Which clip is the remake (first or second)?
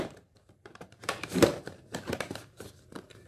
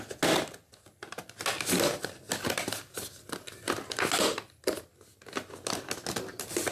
first